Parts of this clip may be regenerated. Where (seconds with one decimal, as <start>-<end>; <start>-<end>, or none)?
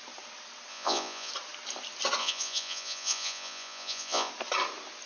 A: 0.7-1.3; 2.2-4.3